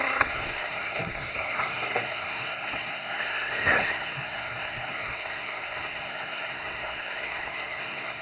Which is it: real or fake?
fake